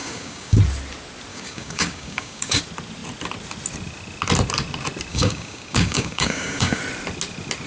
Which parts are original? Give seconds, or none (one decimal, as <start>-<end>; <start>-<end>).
0.6-1.3; 2.6-5.1; 6.8-7.7